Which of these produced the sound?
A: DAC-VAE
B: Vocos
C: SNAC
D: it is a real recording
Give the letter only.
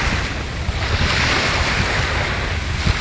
D